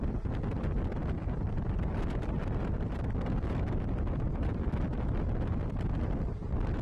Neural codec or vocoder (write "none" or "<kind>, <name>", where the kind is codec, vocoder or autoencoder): none